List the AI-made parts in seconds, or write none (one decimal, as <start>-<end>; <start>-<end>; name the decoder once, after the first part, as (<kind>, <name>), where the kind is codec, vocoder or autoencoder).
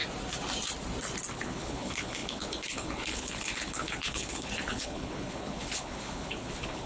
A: 1.3-6.9 (codec, HILCodec)